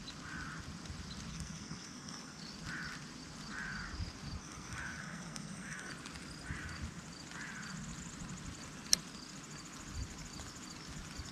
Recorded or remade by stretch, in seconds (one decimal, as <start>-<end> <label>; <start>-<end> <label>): 0.0-1.3 recorded; 1.3-2.4 remade; 2.4-4.4 recorded; 4.4-5.9 remade; 5.9-11.3 recorded